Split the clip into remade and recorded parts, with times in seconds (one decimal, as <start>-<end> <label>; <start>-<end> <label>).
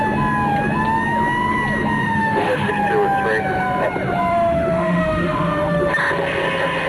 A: 0.0-2.0 recorded; 2.0-2.7 remade; 2.7-4.3 recorded; 4.3-5.9 remade; 5.9-6.9 recorded